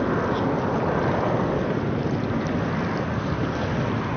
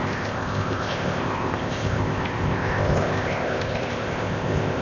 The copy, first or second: second